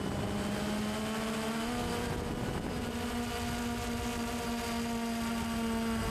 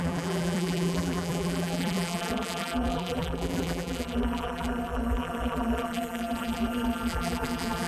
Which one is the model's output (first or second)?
second